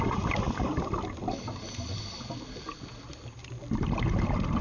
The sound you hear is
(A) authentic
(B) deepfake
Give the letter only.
A